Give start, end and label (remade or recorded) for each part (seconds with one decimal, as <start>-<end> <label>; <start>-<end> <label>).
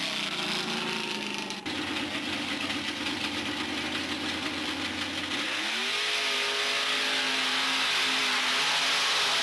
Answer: 0.0-9.4 recorded